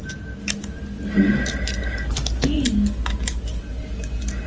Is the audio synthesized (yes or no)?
no